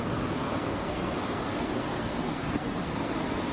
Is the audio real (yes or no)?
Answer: no